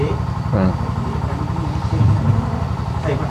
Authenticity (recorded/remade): recorded